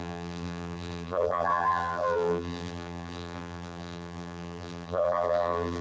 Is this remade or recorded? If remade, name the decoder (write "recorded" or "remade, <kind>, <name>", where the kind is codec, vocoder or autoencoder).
remade, vocoder, BigVGAN v2